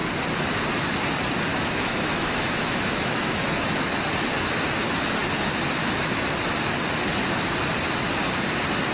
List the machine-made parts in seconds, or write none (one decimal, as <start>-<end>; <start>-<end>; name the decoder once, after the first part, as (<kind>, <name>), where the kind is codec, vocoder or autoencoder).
1.5-3.9 (autoencoder, DAC-VAE)